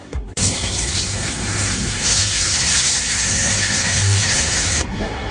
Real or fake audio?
fake